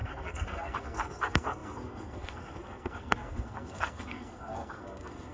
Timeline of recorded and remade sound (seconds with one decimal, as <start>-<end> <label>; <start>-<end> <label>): 0.0-5.3 remade